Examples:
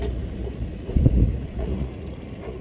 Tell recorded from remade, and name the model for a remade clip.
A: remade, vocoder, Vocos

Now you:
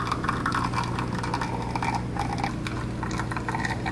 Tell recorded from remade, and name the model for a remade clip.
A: recorded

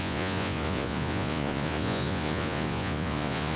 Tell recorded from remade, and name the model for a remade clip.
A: remade, vocoder, Vocos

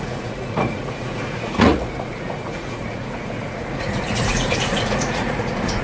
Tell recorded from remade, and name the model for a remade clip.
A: remade, vocoder, Vocos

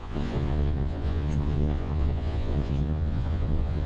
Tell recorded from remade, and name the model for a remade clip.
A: remade, vocoder, Vocos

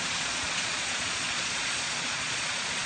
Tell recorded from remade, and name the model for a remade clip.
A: remade, vocoder, Vocos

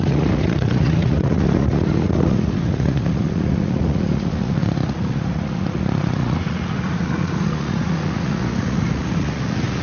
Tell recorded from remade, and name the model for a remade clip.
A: remade, vocoder, Vocos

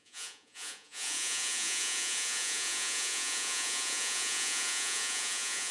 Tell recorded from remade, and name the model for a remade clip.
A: remade, vocoder, Vocos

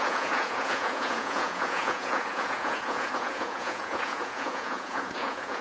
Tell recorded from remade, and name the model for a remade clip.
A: remade, vocoder, Vocos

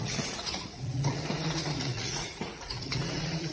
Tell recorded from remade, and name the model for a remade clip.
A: remade, vocoder, Vocos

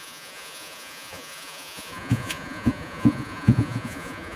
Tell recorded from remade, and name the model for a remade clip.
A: remade, vocoder, Vocos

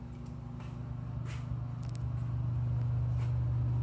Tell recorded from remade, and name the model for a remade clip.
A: recorded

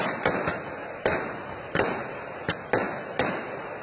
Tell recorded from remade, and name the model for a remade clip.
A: recorded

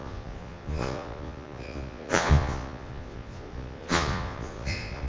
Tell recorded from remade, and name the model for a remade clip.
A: remade, vocoder, Vocos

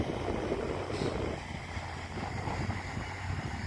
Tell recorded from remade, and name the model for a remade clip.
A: recorded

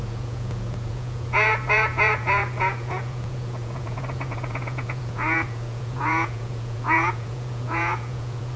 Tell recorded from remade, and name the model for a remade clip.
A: remade, vocoder, Vocos